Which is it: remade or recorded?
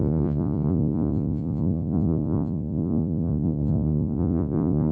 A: remade